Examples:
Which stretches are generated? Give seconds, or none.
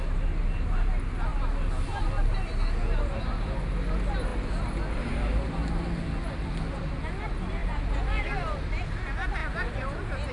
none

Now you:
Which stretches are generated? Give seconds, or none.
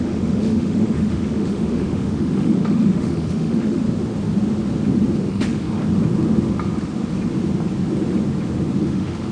0.0-3.8 (autoencoder, DAC-VAE); 5.3-5.8; 8.8-9.3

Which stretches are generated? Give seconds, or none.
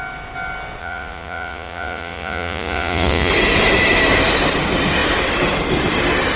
0.8-3.3 (vocoder, Vocos)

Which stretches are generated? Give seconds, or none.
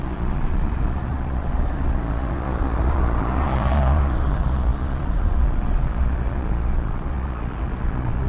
0.0-8.3 (vocoder, Vocos)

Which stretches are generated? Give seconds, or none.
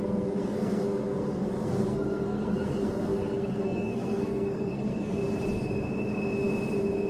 0.0-5.2 (codec, SNAC)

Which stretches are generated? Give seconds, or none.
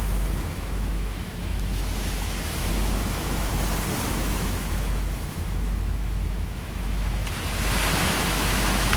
0.0-3.5 (autoencoder, DAC-VAE); 4.1-7.2; 8.0-9.0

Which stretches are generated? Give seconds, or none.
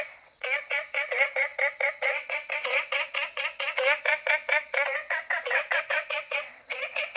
0.0-7.2 (vocoder, WaveNeXt)